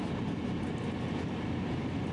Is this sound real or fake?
real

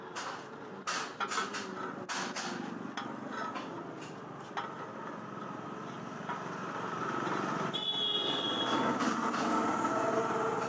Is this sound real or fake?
real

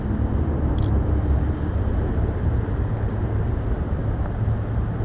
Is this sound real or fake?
real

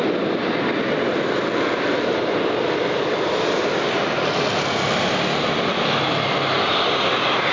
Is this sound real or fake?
real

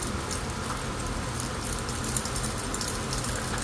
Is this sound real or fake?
real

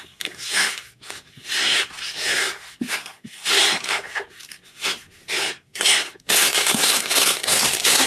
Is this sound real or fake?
fake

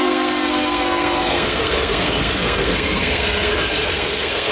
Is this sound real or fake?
fake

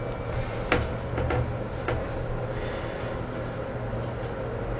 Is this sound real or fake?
real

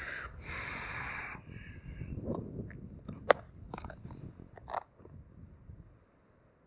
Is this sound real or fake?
real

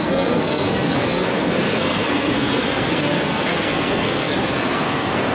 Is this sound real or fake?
fake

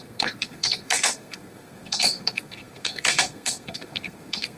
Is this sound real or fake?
fake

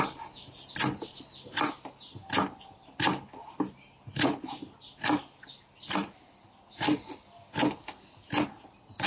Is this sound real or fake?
real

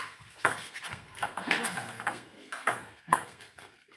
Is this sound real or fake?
fake